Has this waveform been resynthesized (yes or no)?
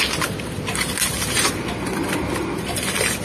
yes